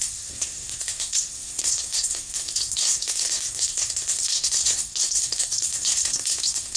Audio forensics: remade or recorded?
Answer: remade